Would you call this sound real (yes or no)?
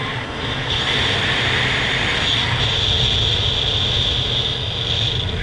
yes